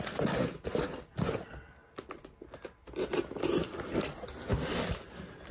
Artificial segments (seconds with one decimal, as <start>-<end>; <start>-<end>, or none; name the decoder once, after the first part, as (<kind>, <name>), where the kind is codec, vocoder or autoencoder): none